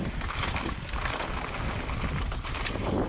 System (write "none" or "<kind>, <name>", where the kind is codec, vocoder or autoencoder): none